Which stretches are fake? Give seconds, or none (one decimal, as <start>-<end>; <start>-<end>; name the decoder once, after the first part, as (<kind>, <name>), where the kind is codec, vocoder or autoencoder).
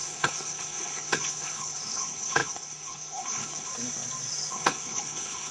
0.0-3.7 (codec, HILCodec); 4.5-5.5